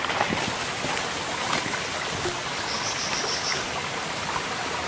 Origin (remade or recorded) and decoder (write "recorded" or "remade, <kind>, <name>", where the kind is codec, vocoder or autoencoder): recorded